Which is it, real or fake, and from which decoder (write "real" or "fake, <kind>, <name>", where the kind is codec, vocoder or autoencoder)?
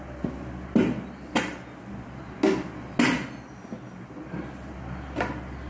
real